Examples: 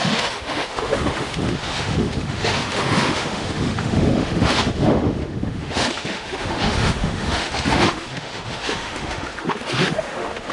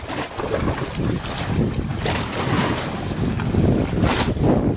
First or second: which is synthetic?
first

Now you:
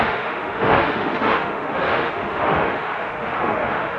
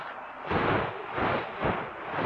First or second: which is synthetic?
first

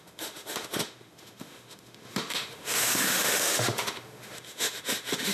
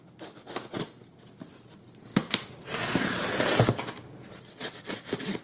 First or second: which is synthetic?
first